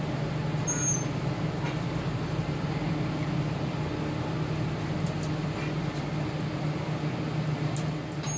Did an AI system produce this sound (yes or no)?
no